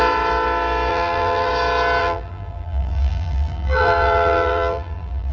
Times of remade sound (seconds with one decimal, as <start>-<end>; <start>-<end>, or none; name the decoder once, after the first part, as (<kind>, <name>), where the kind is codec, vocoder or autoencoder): 0.9-1.5 (vocoder, BigVGAN v2); 2.0-5.3